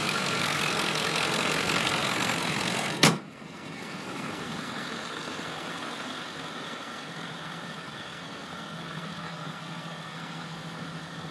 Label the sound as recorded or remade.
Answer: remade